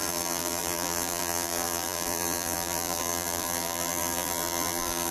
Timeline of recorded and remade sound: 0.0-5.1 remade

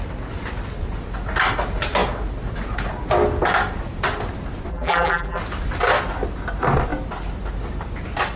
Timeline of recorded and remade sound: 0.0-4.7 recorded; 4.7-5.4 remade; 5.4-8.4 recorded